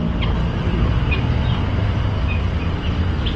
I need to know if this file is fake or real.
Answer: real